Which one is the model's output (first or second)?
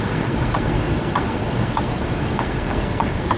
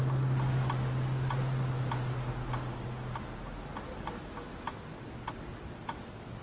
first